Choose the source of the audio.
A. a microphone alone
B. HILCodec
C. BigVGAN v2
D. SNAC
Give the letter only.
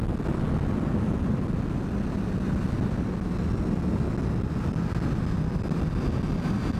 A